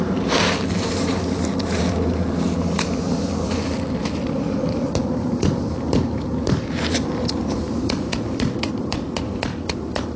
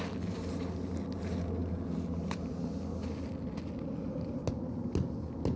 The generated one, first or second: first